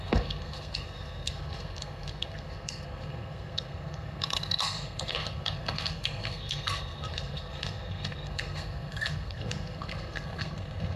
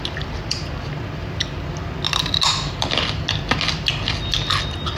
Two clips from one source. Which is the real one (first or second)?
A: second